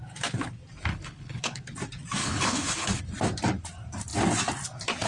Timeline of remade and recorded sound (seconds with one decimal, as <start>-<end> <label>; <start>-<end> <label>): 0.0-0.9 recorded; 0.9-1.6 remade; 1.6-2.2 recorded; 2.2-3.0 remade; 3.0-5.1 recorded